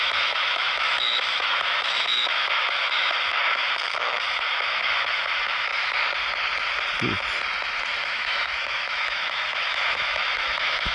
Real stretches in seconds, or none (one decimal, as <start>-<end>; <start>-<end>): 5.7-8.0